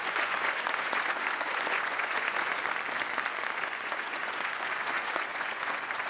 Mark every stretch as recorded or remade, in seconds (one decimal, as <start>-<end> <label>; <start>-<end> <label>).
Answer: 0.0-2.6 remade; 2.6-3.6 recorded; 3.6-6.1 remade